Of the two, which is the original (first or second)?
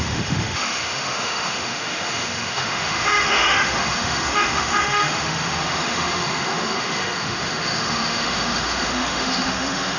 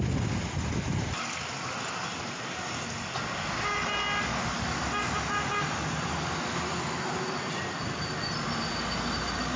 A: second